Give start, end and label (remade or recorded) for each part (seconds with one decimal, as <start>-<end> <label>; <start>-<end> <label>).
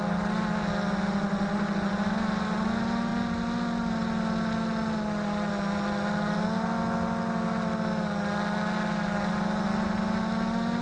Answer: 0.0-10.8 recorded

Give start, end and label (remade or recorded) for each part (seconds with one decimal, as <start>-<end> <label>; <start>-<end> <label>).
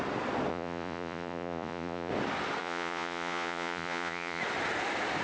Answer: 0.0-0.5 recorded; 0.5-2.1 remade; 2.1-2.6 recorded; 2.6-4.4 remade; 4.4-5.2 recorded